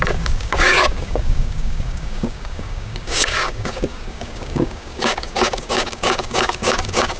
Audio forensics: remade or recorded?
remade